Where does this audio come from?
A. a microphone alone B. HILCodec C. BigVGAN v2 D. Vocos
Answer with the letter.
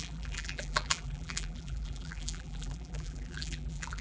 C